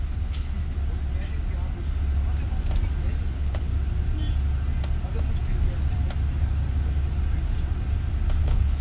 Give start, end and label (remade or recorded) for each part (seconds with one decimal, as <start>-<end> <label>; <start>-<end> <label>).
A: 0.0-0.6 remade; 0.6-3.3 recorded; 3.3-3.7 remade; 3.7-8.4 recorded; 8.4-8.8 remade